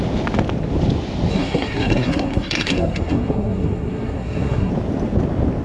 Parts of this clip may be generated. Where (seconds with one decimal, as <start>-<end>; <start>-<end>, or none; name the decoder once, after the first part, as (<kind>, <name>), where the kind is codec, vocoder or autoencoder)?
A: 1.3-4.7 (codec, SNAC)